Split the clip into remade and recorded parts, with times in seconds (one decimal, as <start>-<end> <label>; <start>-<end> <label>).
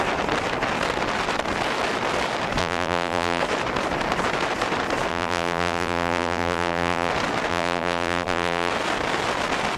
0.0-2.6 recorded; 2.6-3.4 remade; 3.4-5.1 recorded; 5.1-7.1 remade; 7.1-7.5 recorded; 7.5-8.7 remade; 8.7-9.8 recorded